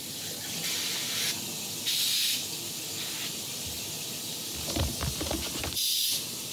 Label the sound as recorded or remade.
recorded